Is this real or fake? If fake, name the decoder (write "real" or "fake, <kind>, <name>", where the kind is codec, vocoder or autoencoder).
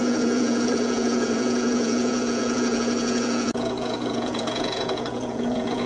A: fake, vocoder, Vocos